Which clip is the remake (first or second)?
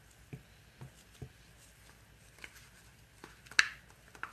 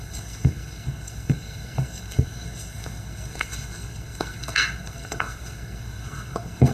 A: second